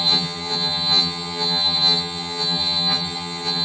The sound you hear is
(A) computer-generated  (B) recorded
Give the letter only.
A